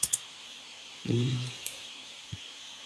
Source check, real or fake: fake